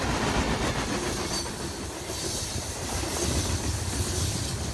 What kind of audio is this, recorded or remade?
remade